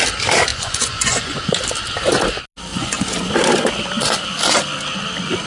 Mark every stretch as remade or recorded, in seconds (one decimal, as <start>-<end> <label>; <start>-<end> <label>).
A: 0.0-0.5 recorded; 0.5-1.4 remade; 1.4-2.7 recorded; 2.7-3.3 remade; 3.3-5.5 recorded